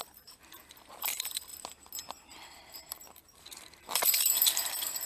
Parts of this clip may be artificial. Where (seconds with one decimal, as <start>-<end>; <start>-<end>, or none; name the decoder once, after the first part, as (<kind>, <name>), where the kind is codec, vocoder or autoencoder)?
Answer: 0.0-1.5 (vocoder, BigVGAN v2); 2.6-5.1